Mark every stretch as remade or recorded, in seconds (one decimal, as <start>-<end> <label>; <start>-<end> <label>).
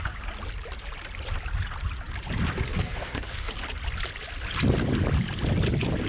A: 0.0-2.7 recorded; 2.7-3.5 remade; 3.5-6.1 recorded